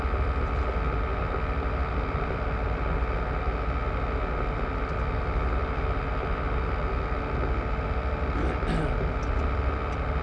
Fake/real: real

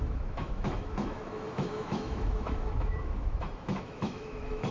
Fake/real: fake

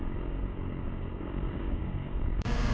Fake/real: fake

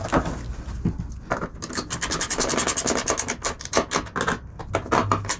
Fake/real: real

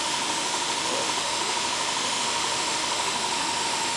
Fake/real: fake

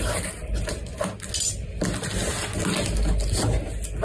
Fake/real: real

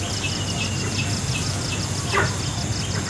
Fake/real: real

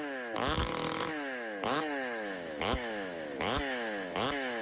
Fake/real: fake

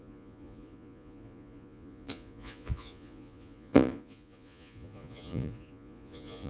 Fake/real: fake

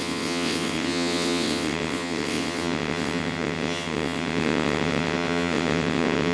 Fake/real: fake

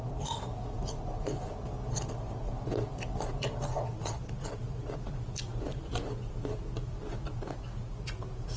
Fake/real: real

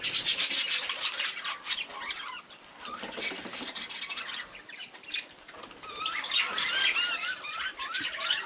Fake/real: real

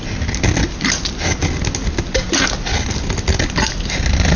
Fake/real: real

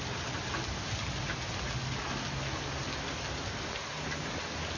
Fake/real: real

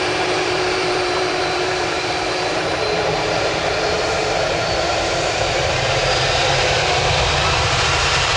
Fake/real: fake